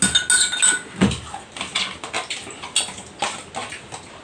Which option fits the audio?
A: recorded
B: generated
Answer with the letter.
A